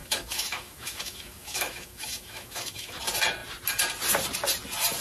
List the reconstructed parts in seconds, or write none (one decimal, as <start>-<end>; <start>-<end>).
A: 0.0-3.0